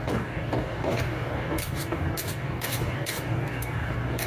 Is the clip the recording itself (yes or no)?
no